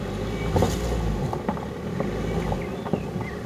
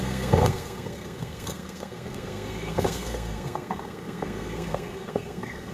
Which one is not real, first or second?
second